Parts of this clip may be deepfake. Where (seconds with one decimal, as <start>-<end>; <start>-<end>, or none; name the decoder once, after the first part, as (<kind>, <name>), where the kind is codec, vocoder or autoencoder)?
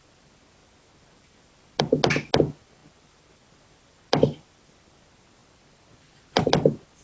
0.6-1.8 (vocoder, BigVGAN v2); 2.8-5.0